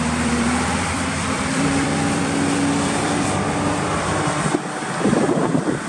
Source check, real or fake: fake